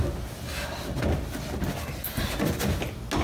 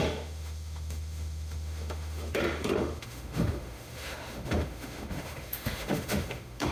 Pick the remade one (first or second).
second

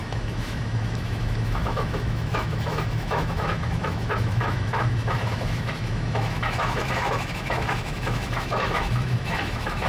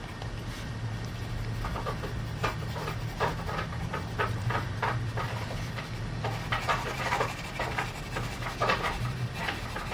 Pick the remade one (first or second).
first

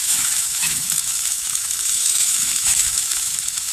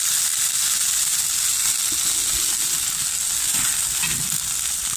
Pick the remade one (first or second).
first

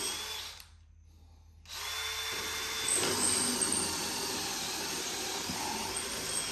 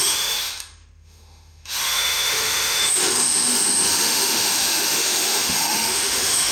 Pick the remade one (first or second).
second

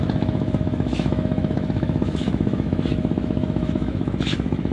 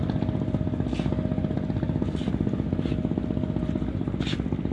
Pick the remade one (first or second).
first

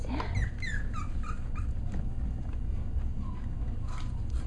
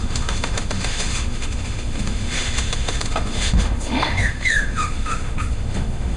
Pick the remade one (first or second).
second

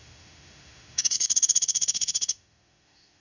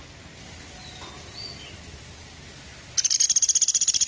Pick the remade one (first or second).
first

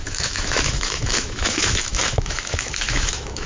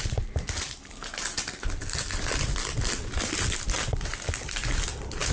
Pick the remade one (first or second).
first